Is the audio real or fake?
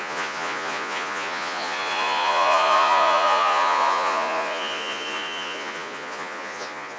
fake